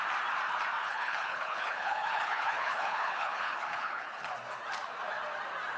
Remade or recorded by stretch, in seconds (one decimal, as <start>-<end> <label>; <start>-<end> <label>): 0.0-0.8 recorded; 0.8-4.3 remade; 4.3-5.8 recorded

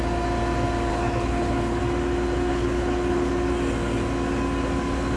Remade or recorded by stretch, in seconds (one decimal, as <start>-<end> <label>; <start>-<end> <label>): 0.0-0.9 recorded; 0.9-1.8 remade; 1.8-2.5 recorded; 2.5-3.3 remade; 3.3-5.2 recorded

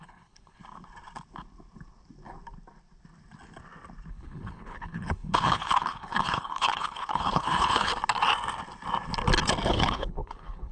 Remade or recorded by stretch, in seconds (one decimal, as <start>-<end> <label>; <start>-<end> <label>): 0.0-0.6 remade; 0.6-4.1 recorded; 4.1-7.9 remade; 7.9-9.7 recorded; 9.7-10.7 remade

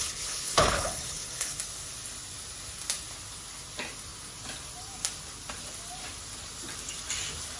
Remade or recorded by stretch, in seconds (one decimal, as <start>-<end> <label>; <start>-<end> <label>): 0.0-1.6 remade; 1.6-7.6 recorded

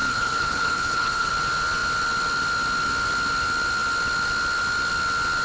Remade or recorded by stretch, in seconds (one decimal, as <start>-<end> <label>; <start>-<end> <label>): 0.0-1.3 remade; 1.3-5.4 recorded

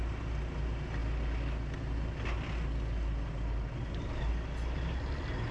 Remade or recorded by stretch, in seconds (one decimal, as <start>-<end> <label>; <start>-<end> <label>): 0.0-5.5 recorded

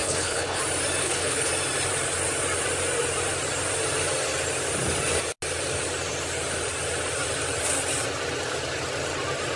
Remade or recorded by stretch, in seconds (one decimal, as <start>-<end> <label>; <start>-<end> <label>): 0.0-0.6 remade; 0.6-1.0 recorded; 1.0-1.5 remade; 1.5-9.6 recorded